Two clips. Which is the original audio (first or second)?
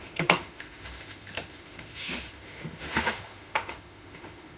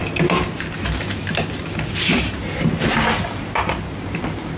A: second